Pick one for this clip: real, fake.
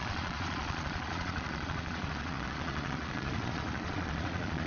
fake